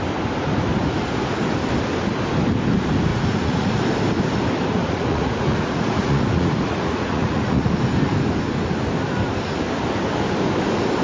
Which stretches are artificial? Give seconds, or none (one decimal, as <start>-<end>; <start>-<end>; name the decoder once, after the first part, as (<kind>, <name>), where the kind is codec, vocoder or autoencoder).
3.1-3.7 (vocoder, Vocos); 4.8-7.7